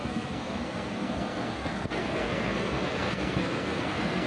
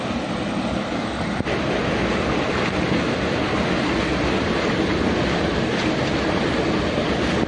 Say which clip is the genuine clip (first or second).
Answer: second